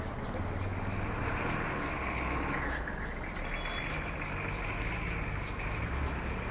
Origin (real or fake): real